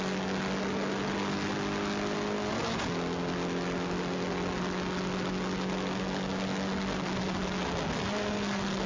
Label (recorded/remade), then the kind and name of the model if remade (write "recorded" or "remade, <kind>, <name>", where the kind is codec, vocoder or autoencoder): recorded